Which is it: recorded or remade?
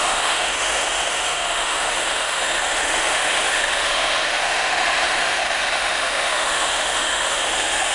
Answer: remade